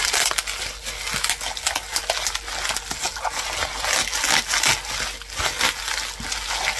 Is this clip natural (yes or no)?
yes